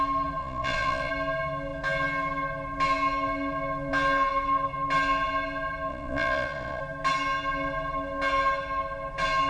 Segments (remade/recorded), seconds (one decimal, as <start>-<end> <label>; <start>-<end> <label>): 0.0-0.4 recorded; 0.4-1.1 remade; 1.1-5.9 recorded; 5.9-6.8 remade; 6.8-9.5 recorded